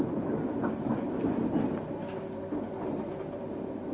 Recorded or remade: recorded